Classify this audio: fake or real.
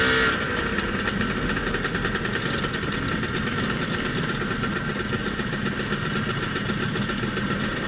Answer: real